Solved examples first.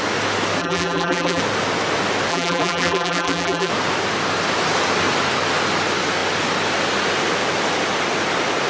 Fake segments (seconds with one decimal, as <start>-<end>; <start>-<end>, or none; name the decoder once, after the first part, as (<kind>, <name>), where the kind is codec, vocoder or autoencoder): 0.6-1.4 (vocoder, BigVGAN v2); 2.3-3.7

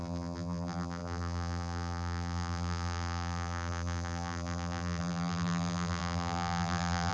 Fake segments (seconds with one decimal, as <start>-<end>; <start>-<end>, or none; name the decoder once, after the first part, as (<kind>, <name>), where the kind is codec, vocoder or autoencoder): 0.0-7.1 (vocoder, BigVGAN v2)

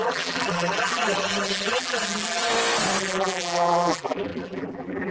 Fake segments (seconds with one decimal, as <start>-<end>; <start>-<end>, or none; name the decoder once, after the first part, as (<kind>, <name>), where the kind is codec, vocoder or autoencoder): 0.0-2.5 (vocoder, BigVGAN v2); 3.0-5.1

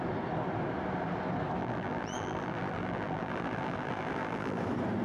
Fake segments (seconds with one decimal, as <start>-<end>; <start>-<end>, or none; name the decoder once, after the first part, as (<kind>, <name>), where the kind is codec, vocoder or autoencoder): 1.6-4.6 (vocoder, BigVGAN v2)